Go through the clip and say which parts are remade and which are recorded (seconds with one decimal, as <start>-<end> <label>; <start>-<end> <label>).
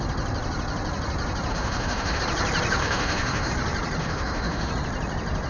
0.0-1.5 recorded; 1.5-2.2 remade; 2.2-2.8 recorded; 2.8-3.5 remade; 3.5-4.0 recorded; 4.0-4.7 remade; 4.7-5.5 recorded